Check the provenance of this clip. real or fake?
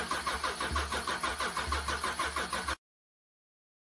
real